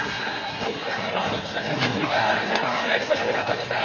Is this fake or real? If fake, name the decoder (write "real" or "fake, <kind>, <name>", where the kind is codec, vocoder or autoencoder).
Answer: fake, codec, SNAC